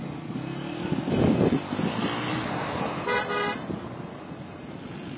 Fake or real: real